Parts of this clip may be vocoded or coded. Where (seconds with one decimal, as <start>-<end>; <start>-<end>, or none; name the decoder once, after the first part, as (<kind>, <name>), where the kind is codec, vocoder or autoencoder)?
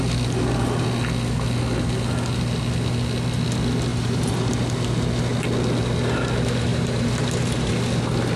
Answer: 3.9-4.5 (vocoder, BigVGAN v2); 6.7-7.7